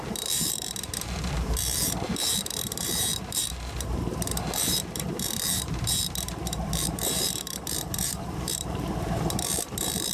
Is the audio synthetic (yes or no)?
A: yes